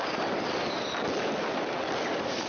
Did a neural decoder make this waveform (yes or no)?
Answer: no